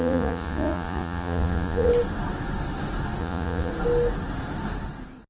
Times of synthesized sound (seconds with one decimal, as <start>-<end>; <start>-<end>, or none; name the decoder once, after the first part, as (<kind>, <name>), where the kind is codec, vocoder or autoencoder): 0.0-1.9 (vocoder, Vocos); 3.2-3.7